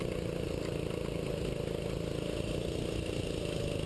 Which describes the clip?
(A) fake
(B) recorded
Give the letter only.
B